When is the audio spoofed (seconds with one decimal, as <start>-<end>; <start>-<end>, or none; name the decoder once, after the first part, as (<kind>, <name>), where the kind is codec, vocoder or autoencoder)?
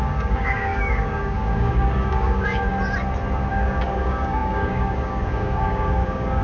0.0-2.7 (codec, DAC); 3.5-6.4